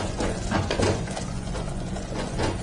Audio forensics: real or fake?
fake